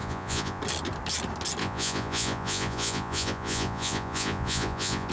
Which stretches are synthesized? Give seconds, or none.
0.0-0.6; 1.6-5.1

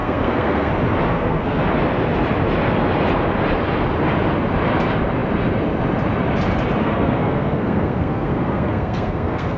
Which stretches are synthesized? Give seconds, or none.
0.0-0.7; 1.1-1.6; 6.8-9.6

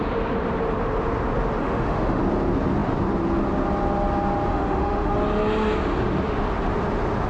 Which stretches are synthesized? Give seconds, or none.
1.6-2.2; 4.5-5.1

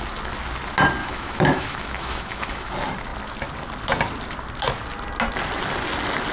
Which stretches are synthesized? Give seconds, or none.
1.0-2.7